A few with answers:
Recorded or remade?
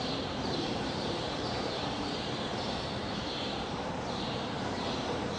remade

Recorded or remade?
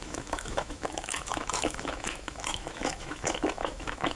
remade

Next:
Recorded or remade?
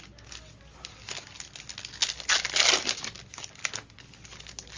recorded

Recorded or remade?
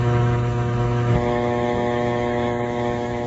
remade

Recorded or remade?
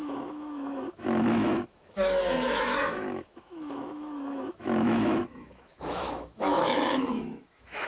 remade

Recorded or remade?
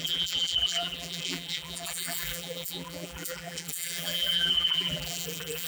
remade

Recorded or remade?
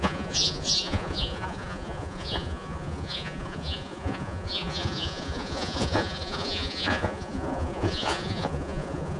remade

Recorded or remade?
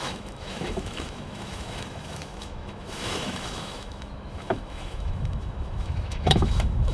remade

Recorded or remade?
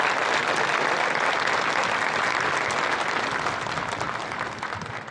recorded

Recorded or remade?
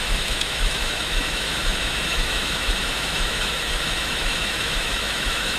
remade